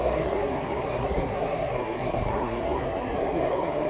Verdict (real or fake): fake